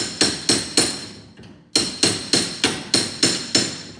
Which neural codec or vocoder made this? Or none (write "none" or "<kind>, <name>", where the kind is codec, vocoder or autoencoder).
none